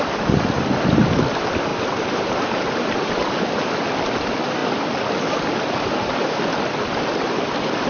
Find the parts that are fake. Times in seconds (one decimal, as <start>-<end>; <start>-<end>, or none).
1.7-3.1